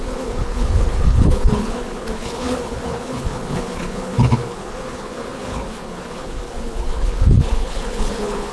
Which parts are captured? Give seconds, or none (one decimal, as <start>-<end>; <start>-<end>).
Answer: none